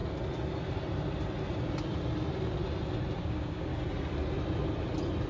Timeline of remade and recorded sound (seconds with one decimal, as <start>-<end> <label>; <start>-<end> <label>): 0.0-3.2 recorded; 3.2-3.7 remade; 3.7-5.3 recorded